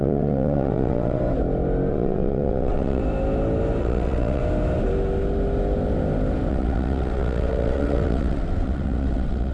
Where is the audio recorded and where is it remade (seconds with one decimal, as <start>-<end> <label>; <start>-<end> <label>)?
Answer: 0.0-1.2 remade; 1.2-1.9 recorded; 1.9-3.0 remade; 3.0-3.8 recorded; 3.8-4.4 remade; 4.4-6.5 recorded; 6.5-9.5 remade